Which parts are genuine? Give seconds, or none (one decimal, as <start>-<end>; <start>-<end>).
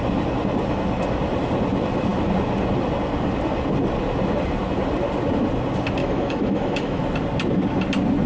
0.0-6.0; 7.0-8.3